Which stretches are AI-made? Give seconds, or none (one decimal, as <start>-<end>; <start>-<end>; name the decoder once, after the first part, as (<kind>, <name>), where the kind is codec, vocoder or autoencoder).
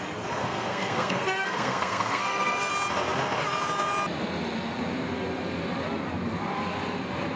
0.4-2.7 (codec, SNAC)